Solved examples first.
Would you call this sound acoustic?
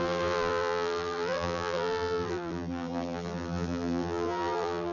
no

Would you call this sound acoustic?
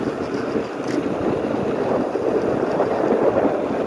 yes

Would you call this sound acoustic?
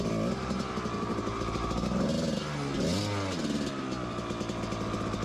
yes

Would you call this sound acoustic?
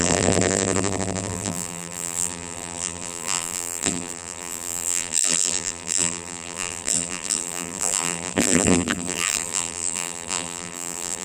no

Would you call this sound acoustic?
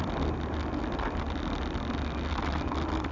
yes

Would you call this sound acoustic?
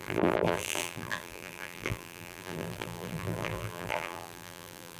no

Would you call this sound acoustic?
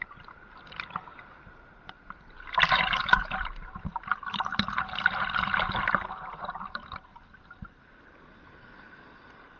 yes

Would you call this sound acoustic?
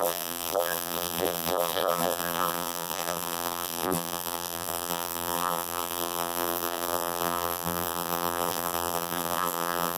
no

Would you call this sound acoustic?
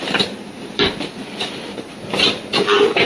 no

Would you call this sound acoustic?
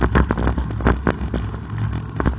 yes